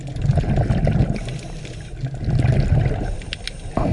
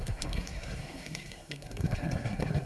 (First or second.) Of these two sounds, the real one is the first